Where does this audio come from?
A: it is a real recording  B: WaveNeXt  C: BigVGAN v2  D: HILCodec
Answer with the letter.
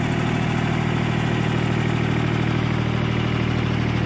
A